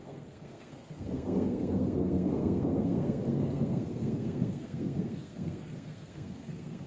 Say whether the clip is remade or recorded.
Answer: remade